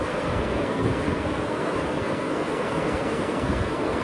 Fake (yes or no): yes